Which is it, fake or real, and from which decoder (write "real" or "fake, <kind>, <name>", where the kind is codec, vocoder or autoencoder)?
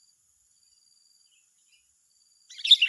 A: real